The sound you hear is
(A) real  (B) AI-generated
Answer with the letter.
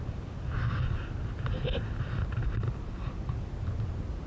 A